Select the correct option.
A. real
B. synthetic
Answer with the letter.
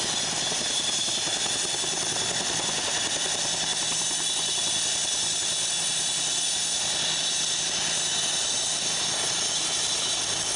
A